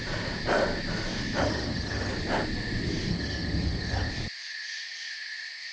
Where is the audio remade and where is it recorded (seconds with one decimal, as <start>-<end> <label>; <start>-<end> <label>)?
0.0-1.4 recorded; 1.4-2.1 remade; 2.1-3.1 recorded; 3.1-4.1 remade; 4.1-5.7 recorded

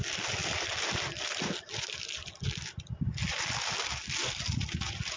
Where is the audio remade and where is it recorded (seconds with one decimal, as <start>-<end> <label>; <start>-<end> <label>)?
0.0-5.2 recorded